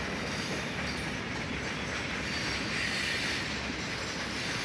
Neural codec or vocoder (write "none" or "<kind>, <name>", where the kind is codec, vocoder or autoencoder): vocoder, BigVGAN v2